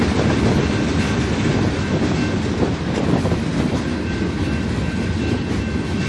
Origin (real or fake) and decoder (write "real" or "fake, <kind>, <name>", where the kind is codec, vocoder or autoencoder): real